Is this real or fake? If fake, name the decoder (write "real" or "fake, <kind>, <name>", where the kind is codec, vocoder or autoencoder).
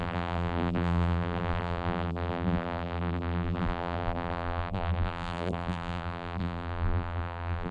fake, vocoder, BigVGAN v2